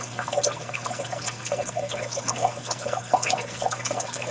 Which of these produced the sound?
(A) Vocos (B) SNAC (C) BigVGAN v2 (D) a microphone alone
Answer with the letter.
B